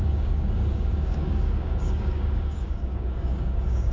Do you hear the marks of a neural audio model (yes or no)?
yes